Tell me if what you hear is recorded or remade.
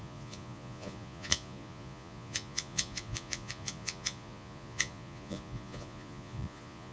remade